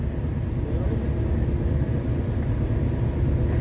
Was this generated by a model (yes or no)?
no